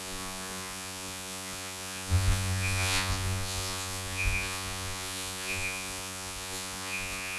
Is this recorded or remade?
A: remade